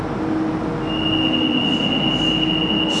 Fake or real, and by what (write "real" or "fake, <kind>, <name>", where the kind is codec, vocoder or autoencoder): real